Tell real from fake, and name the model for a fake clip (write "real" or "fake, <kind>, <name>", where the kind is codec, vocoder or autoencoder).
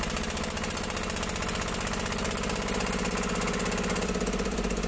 fake, vocoder, BigVGAN v2